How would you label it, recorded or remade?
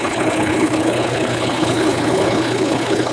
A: remade